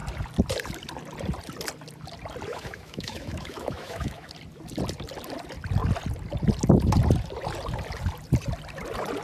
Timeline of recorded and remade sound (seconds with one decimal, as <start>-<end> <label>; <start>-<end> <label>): 0.0-2.5 recorded; 2.5-4.3 remade; 4.3-9.2 recorded